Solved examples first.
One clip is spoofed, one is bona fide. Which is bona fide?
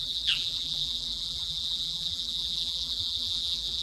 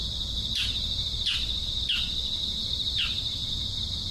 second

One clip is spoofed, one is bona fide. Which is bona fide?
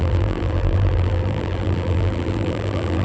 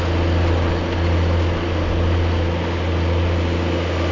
second